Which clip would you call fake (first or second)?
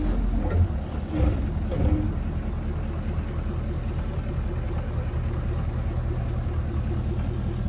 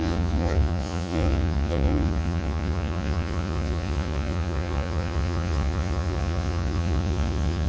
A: second